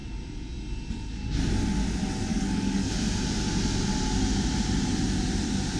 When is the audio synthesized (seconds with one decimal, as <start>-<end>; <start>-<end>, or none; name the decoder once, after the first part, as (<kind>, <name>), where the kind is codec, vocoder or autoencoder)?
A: 2.3-2.9 (codec, DAC)